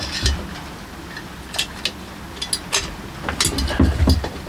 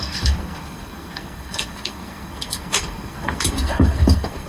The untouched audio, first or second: first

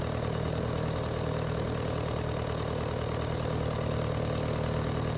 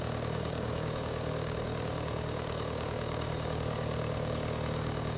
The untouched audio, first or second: first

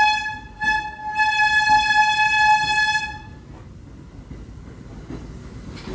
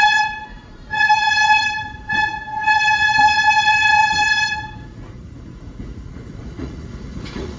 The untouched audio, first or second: first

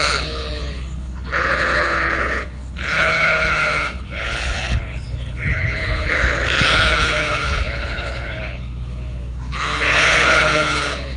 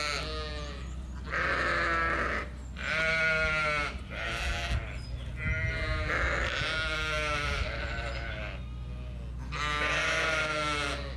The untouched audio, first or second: second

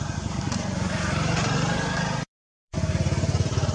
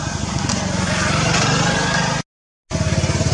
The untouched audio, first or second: second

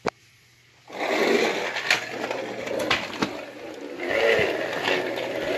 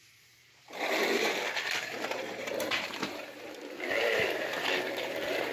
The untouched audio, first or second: first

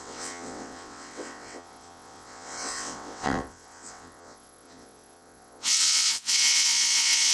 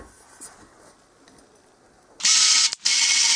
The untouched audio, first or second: second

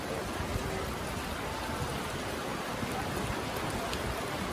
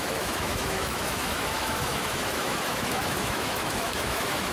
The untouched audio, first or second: first